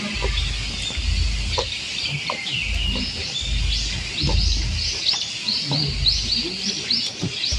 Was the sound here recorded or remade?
recorded